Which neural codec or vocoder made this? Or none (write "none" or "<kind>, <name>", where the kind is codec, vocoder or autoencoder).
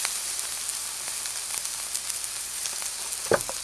none